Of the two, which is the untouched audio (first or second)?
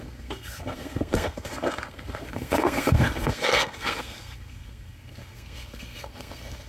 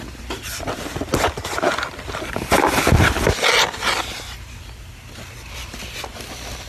second